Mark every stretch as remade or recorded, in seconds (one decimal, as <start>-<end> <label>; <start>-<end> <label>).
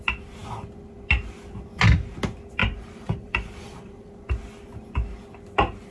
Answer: 0.0-2.6 recorded; 2.6-4.1 remade; 4.1-5.9 recorded